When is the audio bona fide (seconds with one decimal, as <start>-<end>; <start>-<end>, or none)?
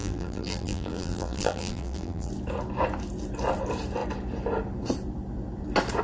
2.3-6.0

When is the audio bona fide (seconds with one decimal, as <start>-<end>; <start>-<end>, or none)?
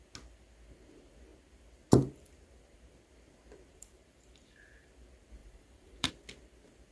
0.0-3.7; 4.9-5.4; 6.1-6.9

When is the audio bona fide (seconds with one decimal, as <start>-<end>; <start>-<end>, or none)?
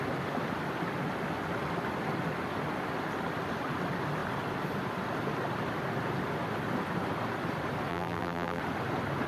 0.0-7.9; 8.6-9.3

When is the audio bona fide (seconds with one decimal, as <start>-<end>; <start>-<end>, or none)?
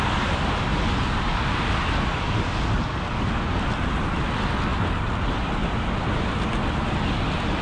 0.0-0.7; 2.3-4.7; 5.5-7.6